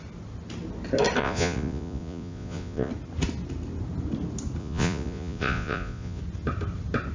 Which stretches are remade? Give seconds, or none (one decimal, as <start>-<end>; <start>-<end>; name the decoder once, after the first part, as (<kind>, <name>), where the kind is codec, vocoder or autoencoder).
1.2-2.9 (vocoder, Vocos); 4.6-6.2